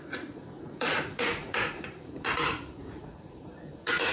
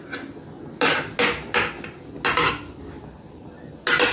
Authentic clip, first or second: second